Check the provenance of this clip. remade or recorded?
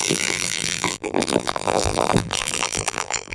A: remade